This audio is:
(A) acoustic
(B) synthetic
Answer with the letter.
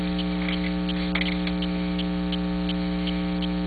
A